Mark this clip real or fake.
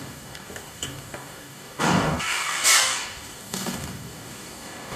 fake